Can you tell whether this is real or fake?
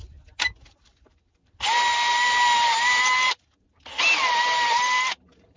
real